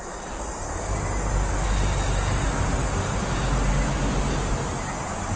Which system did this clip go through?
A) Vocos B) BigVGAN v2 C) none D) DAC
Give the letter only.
C